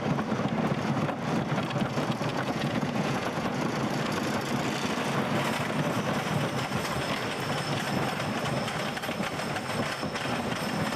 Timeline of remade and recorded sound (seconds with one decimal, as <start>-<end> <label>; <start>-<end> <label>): 0.0-2.3 recorded; 2.3-3.6 remade; 3.6-11.0 recorded